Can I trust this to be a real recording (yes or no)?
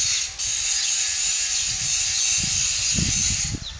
yes